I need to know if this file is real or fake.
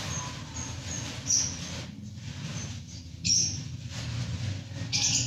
real